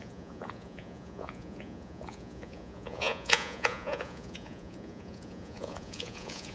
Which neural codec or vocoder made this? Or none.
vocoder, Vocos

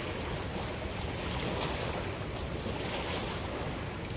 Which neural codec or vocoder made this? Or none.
none